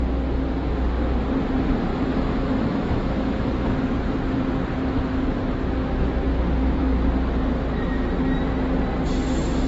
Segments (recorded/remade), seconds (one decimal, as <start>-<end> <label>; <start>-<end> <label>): 0.0-1.9 recorded; 1.9-3.5 remade; 3.5-9.7 recorded